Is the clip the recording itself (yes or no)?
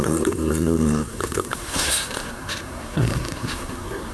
no